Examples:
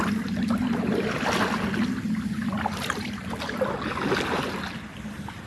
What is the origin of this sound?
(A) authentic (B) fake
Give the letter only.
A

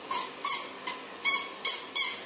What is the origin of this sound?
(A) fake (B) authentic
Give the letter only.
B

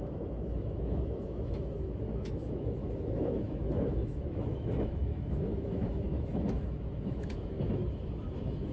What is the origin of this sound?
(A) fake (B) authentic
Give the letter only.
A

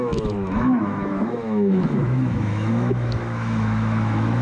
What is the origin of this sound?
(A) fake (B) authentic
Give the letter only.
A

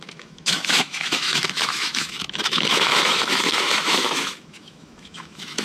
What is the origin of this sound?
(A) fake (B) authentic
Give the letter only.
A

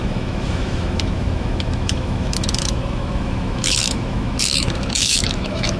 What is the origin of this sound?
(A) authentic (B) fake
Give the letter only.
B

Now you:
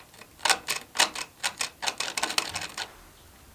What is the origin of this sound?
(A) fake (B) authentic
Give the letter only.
B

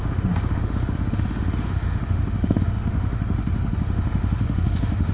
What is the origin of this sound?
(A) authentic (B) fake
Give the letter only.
B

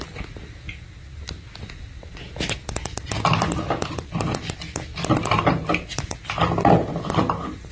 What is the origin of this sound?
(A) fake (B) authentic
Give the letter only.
B